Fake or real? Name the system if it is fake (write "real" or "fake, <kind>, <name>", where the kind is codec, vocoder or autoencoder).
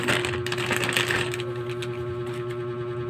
real